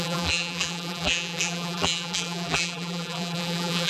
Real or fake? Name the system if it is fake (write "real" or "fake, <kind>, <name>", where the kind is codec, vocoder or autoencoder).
fake, vocoder, BigVGAN v2